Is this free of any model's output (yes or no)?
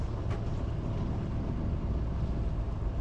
yes